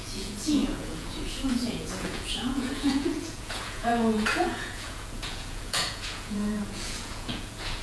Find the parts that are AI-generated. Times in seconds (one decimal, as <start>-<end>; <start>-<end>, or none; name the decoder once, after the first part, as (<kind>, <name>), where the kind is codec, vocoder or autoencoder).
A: 0.0-7.8 (vocoder, Vocos)